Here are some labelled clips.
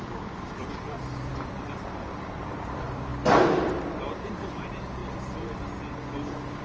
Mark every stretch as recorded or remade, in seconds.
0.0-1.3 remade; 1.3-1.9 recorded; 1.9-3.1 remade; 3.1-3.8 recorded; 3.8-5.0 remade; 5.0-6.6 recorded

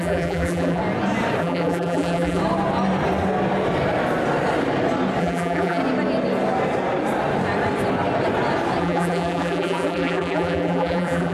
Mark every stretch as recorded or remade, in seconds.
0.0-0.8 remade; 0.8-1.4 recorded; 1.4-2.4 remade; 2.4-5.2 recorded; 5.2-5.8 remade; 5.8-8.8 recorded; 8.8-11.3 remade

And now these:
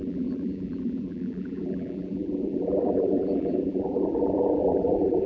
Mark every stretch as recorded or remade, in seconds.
0.0-5.3 remade

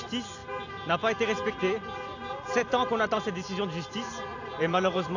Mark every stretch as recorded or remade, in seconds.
0.0-4.3 recorded; 4.3-5.2 remade

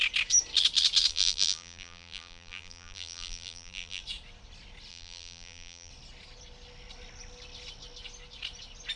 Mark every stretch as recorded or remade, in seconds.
0.0-1.1 recorded; 1.1-4.0 remade; 4.0-4.9 recorded; 4.9-5.9 remade; 5.9-9.0 recorded